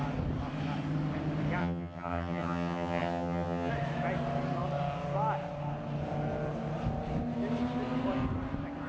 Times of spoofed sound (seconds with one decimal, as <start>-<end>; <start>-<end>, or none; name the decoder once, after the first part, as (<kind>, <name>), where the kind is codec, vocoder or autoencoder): 1.6-3.7 (vocoder, HiFi-GAN)